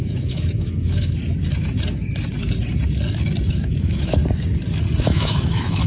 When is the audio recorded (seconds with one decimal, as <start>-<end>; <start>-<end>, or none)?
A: 1.2-3.5; 4.2-5.0